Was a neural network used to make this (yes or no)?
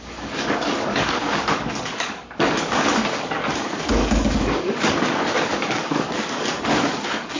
yes